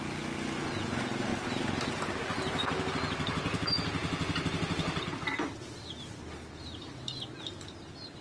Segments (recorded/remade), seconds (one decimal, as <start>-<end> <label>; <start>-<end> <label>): 0.0-8.2 recorded